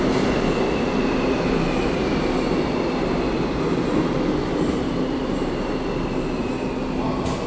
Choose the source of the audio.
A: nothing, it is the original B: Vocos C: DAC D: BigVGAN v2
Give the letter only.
A